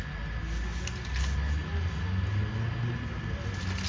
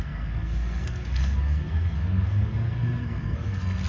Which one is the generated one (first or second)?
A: second